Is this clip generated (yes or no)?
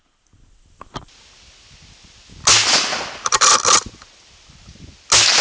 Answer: no